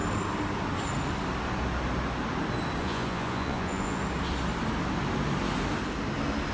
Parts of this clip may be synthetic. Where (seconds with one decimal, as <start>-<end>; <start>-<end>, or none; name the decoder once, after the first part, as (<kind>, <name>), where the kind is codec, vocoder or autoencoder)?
2.8-4.0 (vocoder, Vocos)